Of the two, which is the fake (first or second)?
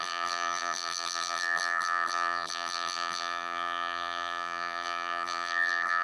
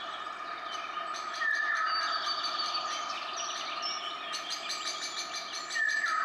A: first